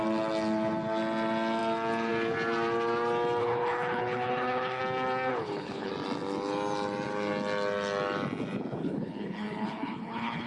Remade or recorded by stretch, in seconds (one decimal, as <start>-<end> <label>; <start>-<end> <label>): 0.0-3.4 recorded; 3.4-4.8 remade; 4.8-5.3 recorded; 5.3-5.9 remade; 5.9-8.8 recorded; 8.8-10.5 remade